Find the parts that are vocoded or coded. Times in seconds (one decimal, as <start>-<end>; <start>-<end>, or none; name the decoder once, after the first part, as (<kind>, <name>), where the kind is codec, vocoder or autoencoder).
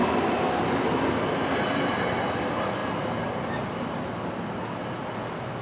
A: none